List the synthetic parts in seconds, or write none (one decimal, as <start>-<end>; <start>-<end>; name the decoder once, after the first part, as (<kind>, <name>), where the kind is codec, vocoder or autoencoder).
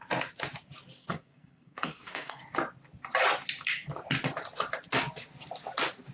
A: 1.0-2.4 (codec, SNAC)